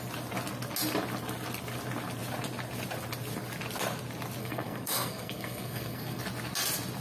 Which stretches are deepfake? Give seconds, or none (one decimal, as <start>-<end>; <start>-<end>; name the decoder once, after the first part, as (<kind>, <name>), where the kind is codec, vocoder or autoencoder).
4.4-6.2 (codec, SNAC)